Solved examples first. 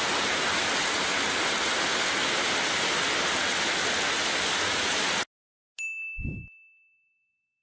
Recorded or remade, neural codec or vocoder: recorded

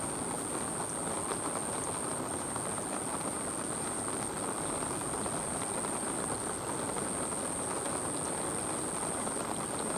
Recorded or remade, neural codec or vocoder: recorded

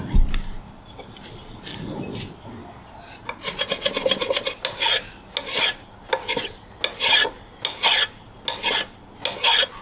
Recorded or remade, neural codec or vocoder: recorded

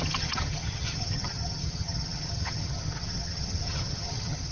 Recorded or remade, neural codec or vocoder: remade, vocoder, HiFi-GAN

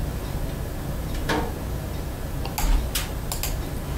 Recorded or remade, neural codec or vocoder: recorded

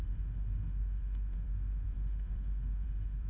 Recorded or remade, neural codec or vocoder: remade, autoencoder, DAC-VAE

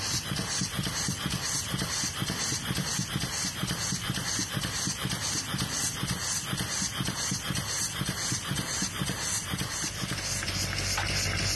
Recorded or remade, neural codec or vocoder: recorded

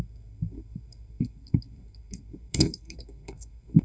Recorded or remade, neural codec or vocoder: remade, codec, SNAC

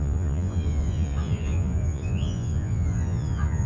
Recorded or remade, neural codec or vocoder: remade, vocoder, Vocos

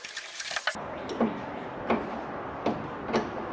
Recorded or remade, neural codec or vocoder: recorded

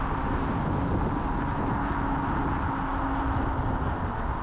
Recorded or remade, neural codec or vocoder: recorded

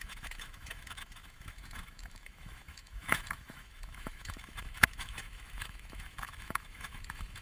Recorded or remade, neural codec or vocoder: remade, autoencoder, DAC-VAE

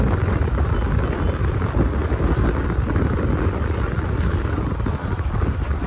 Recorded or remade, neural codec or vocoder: recorded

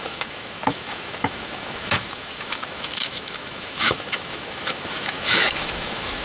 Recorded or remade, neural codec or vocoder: remade, autoencoder, DAC-VAE